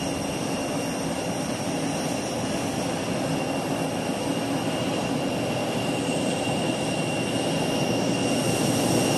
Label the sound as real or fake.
real